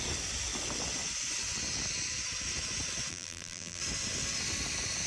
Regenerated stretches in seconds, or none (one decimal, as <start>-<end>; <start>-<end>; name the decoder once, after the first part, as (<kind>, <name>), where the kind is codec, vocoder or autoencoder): 3.1-3.8 (vocoder, BigVGAN v2)